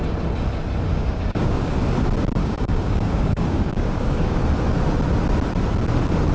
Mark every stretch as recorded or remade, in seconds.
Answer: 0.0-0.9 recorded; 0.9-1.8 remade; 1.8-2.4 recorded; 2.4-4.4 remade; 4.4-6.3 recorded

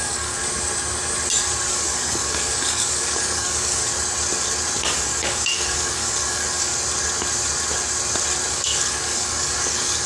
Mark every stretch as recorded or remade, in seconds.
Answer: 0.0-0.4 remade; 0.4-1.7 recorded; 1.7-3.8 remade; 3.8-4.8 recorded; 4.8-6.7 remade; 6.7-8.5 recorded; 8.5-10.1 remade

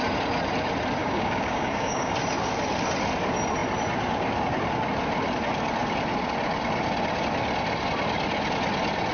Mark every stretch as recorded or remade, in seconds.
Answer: 0.0-1.0 recorded; 1.0-2.1 remade; 2.1-9.1 recorded

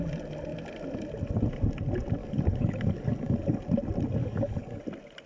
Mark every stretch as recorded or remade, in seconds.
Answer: 0.0-2.2 recorded; 2.2-3.6 remade; 3.6-4.2 recorded; 4.2-4.8 remade; 4.8-5.3 recorded

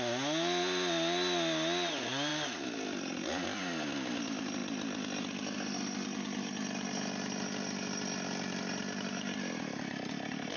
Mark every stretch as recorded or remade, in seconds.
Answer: 0.0-10.6 recorded